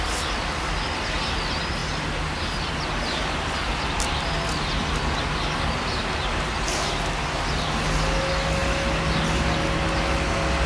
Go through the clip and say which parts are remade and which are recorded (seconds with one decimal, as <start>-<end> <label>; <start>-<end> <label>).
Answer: 0.0-10.7 recorded